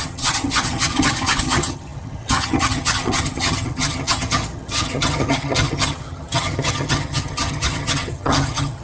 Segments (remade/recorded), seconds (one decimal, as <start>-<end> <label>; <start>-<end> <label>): 0.0-8.8 remade